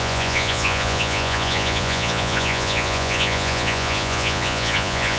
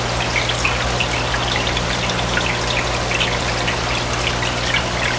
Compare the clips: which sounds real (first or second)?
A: second